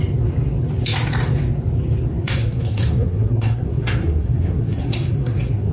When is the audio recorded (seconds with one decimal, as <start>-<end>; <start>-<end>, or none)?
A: 0.0-2.1